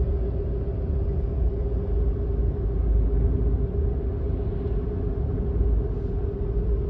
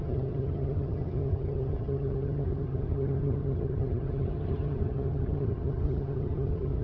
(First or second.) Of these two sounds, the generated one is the second